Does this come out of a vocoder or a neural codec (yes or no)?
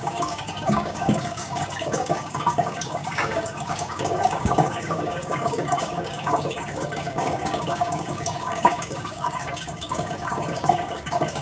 yes